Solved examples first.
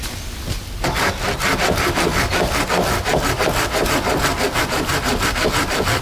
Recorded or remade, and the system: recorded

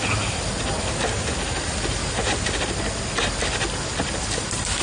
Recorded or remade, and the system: recorded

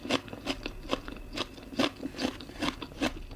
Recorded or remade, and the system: recorded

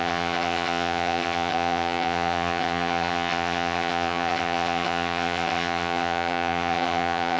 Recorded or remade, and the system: remade, vocoder, HiFi-GAN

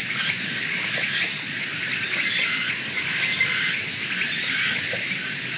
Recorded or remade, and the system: recorded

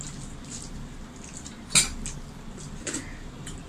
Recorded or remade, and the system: recorded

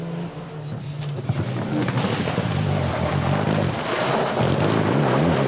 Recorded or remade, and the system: recorded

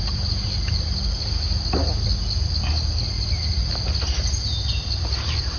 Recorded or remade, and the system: recorded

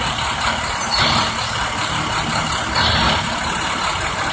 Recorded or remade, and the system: recorded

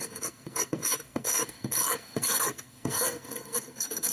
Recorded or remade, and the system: remade, codec, SNAC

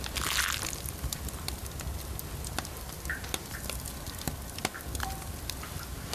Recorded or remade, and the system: recorded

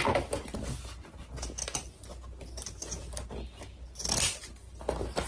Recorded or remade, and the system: recorded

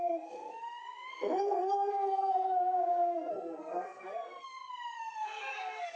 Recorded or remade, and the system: remade, codec, SNAC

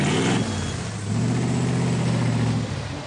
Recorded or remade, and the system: recorded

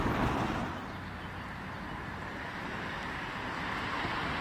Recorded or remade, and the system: recorded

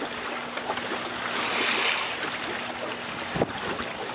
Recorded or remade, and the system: recorded